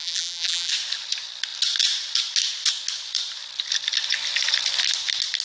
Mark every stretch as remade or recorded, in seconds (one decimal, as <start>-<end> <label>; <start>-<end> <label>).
0.0-0.7 remade; 0.7-5.4 recorded